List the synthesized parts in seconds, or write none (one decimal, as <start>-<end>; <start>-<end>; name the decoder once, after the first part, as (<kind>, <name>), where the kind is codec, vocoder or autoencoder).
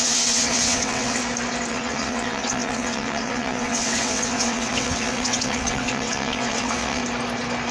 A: 0.0-1.2 (vocoder, WaveNeXt); 1.7-7.0